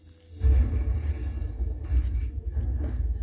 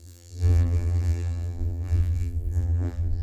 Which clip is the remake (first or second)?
second